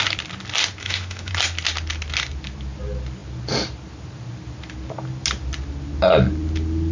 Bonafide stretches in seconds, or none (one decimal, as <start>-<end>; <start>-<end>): 0.0-0.8; 1.3-6.9